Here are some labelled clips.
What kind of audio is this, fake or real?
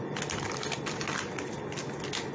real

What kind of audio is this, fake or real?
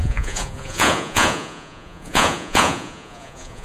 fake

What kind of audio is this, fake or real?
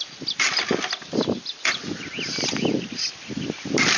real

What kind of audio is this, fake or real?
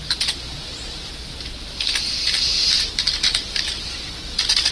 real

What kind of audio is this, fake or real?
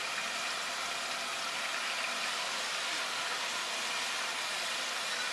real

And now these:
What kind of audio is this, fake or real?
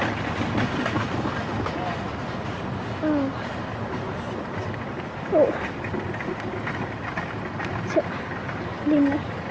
real